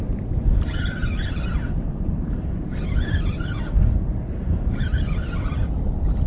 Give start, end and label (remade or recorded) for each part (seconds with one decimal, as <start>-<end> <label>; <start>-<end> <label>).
0.0-1.0 recorded; 1.0-4.8 remade; 4.8-6.3 recorded